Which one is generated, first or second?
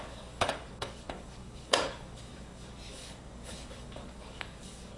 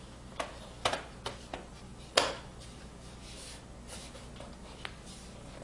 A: first